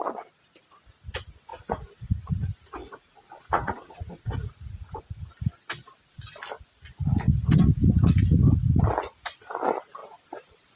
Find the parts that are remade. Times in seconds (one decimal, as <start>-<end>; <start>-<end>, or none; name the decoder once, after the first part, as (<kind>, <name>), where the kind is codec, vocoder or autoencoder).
1.5-2.3 (vocoder, Vocos); 2.8-5.0; 7.8-8.4